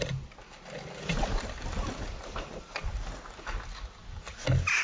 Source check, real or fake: real